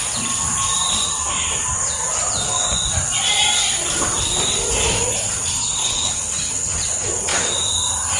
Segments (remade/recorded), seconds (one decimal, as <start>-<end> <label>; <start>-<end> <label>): 0.0-5.8 recorded; 5.8-6.7 remade; 6.7-8.2 recorded